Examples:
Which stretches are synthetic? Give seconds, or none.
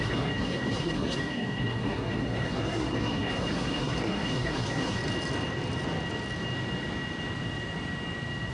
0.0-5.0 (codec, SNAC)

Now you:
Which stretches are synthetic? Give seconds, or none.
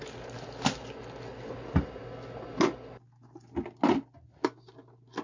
none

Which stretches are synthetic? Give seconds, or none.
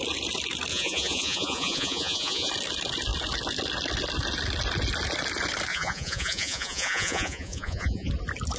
0.7-2.5 (vocoder, Vocos); 5.7-8.1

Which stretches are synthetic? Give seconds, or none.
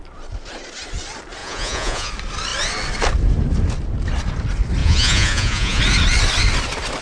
1.4-2.1 (vocoder, Vocos); 4.8-5.8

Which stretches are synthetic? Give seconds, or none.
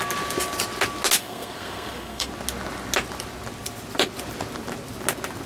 1.2-2.3 (codec, SNAC)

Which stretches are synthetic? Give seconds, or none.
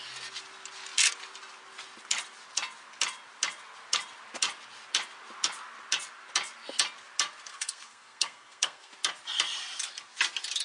7.5-8.9 (codec, SNAC)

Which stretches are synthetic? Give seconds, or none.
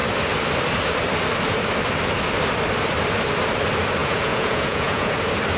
4.0-5.1 (vocoder, Vocos)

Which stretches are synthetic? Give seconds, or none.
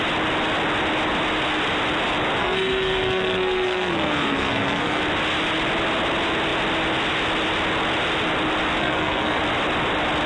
2.4-5.0 (codec, SNAC); 8.8-9.4